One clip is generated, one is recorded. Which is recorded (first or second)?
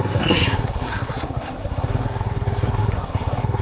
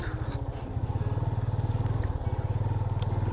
second